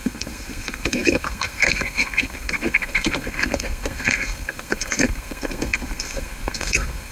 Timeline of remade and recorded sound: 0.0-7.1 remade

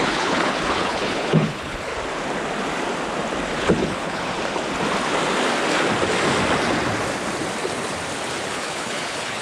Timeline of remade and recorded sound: 0.0-1.9 remade; 1.9-3.6 recorded; 3.6-4.3 remade; 4.3-8.5 recorded; 8.5-9.4 remade